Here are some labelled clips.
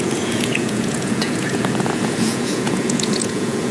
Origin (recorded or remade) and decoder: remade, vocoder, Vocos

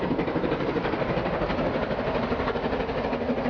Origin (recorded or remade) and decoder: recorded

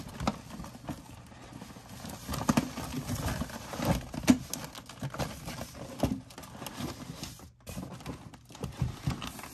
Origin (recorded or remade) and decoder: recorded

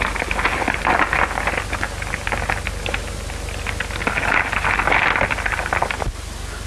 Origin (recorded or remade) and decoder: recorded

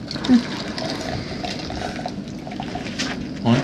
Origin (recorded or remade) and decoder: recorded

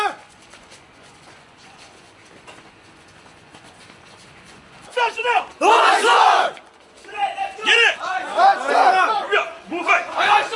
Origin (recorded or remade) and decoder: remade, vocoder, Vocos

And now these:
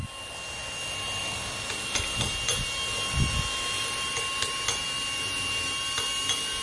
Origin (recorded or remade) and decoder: recorded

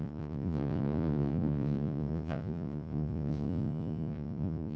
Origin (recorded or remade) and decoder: remade, vocoder, Vocos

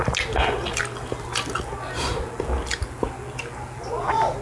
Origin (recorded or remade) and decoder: recorded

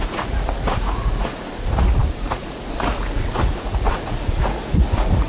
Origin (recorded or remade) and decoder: remade, vocoder, Vocos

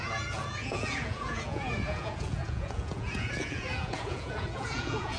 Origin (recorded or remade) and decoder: remade, vocoder, Vocos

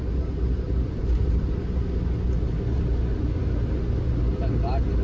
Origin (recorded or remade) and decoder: recorded